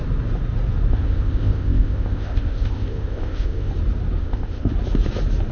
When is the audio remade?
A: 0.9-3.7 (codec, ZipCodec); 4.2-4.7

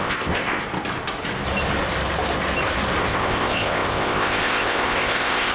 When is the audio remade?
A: 0.0-0.6 (codec, ZipCodec); 3.0-5.5

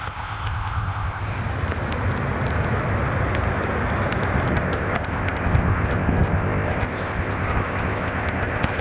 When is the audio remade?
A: 0.0-1.2 (codec, ZipCodec); 4.5-8.8

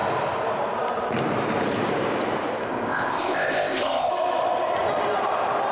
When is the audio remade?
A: 2.6-4.1 (codec, ZipCodec)

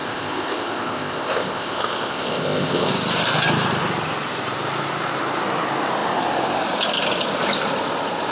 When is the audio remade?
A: 0.0-2.9 (codec, ZipCodec)